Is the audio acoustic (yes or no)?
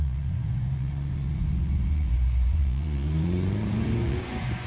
no